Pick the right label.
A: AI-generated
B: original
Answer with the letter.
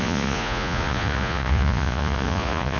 A